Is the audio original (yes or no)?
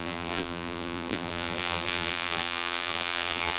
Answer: no